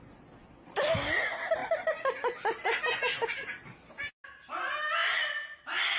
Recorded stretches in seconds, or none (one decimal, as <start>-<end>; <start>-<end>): 0.0-6.0